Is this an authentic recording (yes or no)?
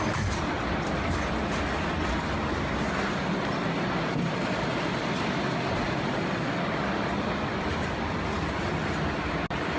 yes